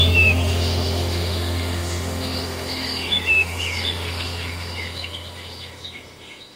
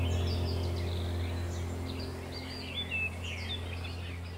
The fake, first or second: first